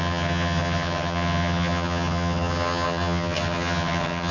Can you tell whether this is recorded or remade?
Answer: remade